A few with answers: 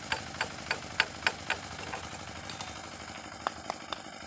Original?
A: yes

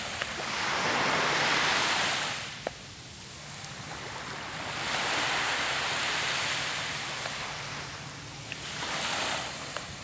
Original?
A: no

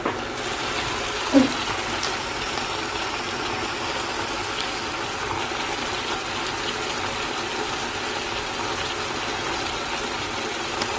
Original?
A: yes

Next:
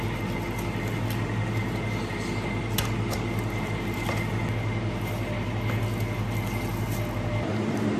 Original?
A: yes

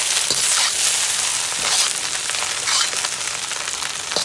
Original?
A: yes